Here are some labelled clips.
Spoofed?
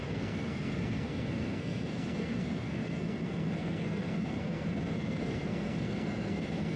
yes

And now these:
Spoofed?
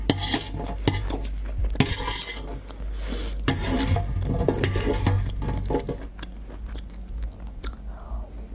no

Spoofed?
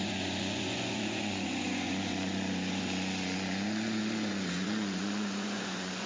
yes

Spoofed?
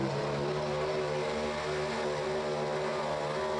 no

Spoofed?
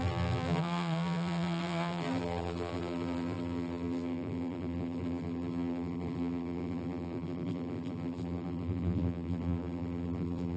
yes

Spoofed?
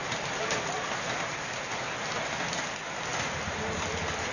no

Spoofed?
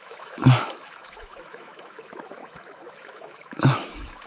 yes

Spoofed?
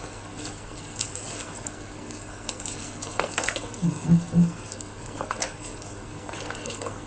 yes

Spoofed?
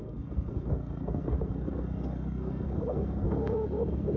yes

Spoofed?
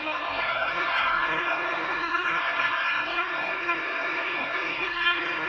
yes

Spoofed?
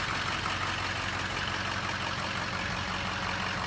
no